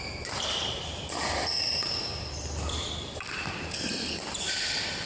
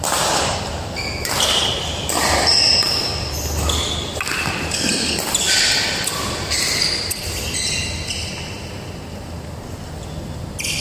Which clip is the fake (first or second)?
first